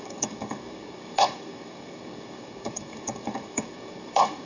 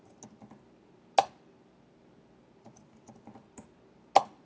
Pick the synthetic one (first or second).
first